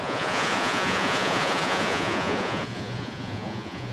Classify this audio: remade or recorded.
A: remade